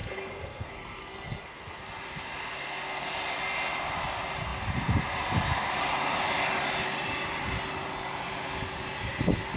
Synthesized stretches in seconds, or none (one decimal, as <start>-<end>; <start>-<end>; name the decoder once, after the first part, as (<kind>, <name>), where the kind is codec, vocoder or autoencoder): 0.0-1.8 (codec, SNAC); 2.4-3.0